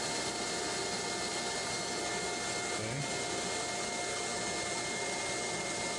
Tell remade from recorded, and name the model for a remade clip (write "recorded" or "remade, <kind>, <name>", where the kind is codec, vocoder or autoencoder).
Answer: recorded